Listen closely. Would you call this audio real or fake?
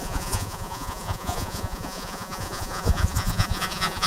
fake